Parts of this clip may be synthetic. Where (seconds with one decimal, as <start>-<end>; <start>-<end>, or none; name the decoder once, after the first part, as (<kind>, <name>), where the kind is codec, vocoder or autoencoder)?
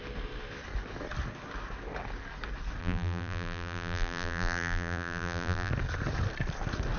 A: 2.8-5.7 (vocoder, BigVGAN v2)